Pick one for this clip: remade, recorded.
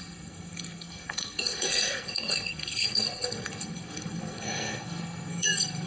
remade